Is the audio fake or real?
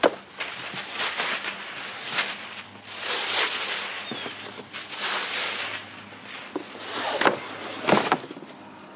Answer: real